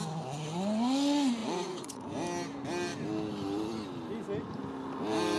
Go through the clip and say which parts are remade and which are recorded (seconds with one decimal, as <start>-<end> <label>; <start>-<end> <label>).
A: 0.0-1.4 recorded; 1.4-2.0 remade; 2.0-5.4 recorded